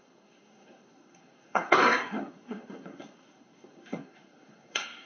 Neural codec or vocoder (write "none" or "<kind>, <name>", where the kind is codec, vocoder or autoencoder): codec, SNAC